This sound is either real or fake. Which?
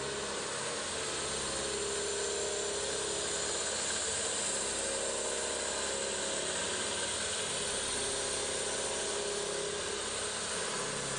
real